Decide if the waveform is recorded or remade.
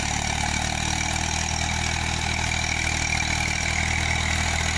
recorded